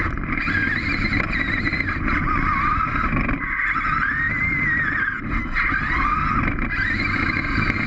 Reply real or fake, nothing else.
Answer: real